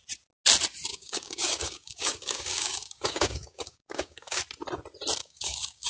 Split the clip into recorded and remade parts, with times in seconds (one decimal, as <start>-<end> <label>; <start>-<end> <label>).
0.0-0.9 recorded; 0.9-4.4 remade; 4.4-5.2 recorded; 5.2-5.9 remade